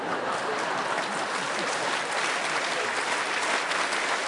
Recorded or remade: recorded